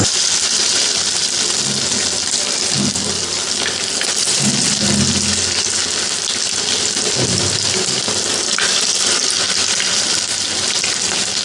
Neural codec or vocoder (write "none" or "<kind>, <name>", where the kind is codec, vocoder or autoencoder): none